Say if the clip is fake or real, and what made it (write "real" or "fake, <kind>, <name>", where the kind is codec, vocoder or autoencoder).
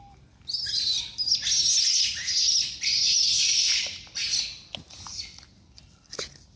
real